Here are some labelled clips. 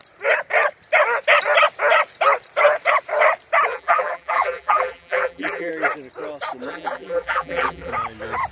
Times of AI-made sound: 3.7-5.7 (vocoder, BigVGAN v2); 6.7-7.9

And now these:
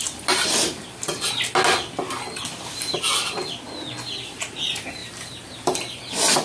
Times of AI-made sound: 5.0-6.0 (vocoder, BigVGAN v2)

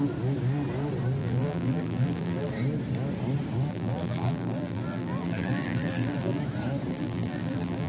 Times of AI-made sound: 1.2-2.5 (vocoder, BigVGAN v2); 3.7-6.4; 6.9-7.9

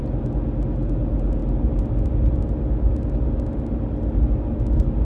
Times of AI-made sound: none